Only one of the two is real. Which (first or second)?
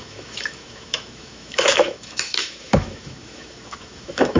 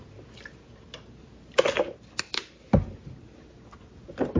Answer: second